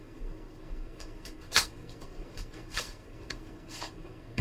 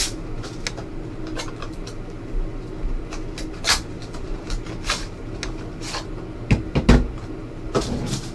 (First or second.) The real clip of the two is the second